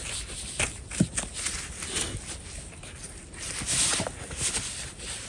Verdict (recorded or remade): recorded